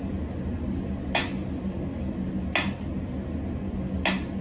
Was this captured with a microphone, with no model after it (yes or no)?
yes